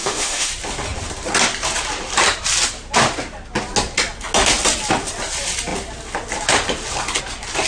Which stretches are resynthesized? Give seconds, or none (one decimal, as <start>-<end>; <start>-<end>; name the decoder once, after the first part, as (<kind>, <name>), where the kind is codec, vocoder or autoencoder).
0.0-0.5 (autoencoder, DAC-VAE)